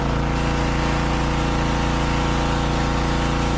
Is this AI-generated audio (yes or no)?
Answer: no